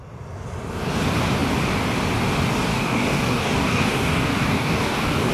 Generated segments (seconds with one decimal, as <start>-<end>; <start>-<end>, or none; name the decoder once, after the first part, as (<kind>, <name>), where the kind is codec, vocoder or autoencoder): 2.7-5.3 (codec, DAC)